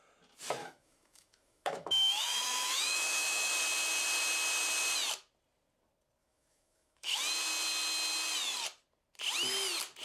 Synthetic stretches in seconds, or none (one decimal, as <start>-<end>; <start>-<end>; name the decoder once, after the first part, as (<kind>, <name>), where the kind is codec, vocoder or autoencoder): 0.6-3.5 (autoencoder, DAC-VAE); 6.2-7.2